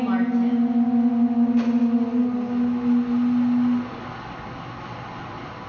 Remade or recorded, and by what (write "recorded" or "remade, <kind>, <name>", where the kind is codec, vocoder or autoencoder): recorded